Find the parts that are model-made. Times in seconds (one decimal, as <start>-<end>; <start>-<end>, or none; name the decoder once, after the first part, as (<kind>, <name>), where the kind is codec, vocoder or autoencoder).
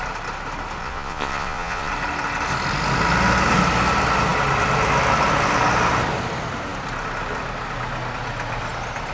0.8-1.9 (vocoder, Vocos)